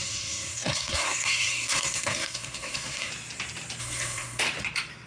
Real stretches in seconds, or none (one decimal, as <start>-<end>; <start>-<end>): 3.1-3.8; 4.4-5.1